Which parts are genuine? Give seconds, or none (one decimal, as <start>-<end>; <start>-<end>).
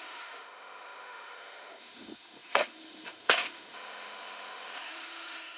none